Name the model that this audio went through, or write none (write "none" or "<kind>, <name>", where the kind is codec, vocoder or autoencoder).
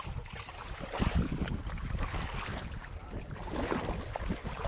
none